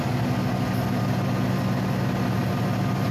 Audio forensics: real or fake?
real